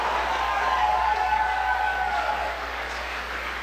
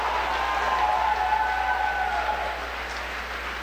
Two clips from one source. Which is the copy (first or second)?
first